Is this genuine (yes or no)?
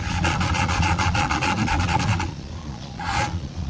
no